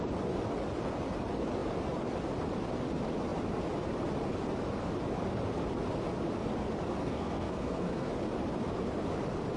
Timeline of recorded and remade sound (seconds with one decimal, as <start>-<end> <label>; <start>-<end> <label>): 0.0-7.0 recorded; 7.0-8.1 remade; 8.1-9.6 recorded